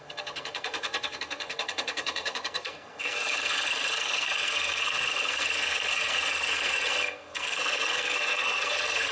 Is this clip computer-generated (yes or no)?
yes